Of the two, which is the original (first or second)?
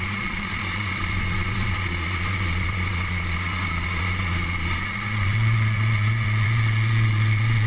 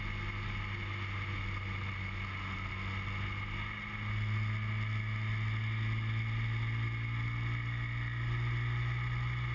second